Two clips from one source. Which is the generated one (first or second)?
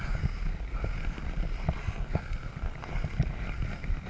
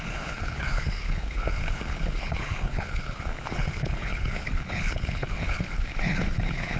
second